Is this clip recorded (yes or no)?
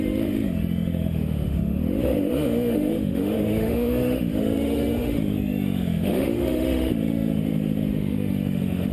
no